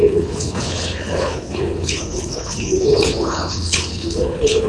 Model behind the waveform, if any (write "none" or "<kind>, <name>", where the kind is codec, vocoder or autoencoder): codec, HILCodec